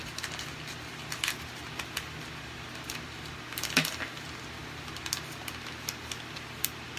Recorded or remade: recorded